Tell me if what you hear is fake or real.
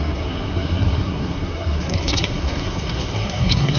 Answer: fake